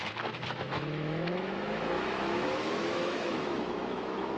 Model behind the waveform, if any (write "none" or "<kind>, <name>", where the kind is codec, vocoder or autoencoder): autoencoder, DAC-VAE